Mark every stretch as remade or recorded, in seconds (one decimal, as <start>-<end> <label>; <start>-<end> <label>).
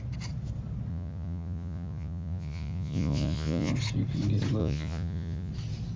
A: 0.0-0.9 recorded; 0.9-3.7 remade; 3.7-4.6 recorded; 4.6-5.5 remade; 5.5-6.0 recorded